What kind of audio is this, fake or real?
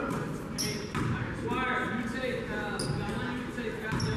real